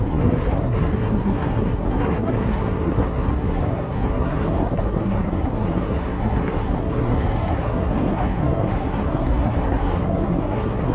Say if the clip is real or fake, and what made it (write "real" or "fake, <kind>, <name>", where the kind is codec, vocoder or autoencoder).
fake, codec, SNAC